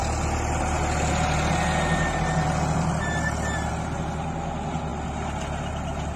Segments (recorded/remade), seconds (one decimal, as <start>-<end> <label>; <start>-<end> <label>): 0.0-6.2 recorded